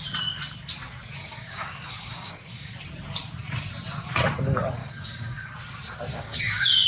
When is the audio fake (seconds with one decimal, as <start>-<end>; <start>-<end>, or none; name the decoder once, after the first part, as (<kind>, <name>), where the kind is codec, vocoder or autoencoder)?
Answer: 1.2-2.7 (codec, DAC); 4.8-5.5; 6.1-6.9